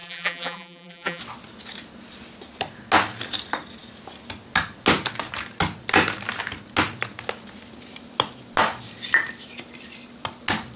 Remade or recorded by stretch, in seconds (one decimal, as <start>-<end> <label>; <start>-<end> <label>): 0.0-1.2 remade; 1.2-10.8 recorded